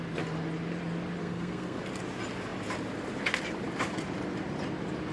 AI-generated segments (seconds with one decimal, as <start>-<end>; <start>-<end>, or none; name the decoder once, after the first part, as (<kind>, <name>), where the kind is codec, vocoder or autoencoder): 1.2-1.8 (codec, SNAC)